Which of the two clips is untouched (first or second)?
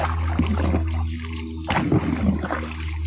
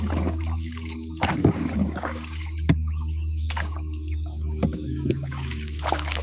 first